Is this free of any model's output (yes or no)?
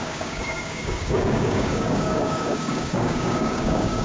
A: no